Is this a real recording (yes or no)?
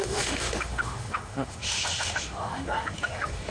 no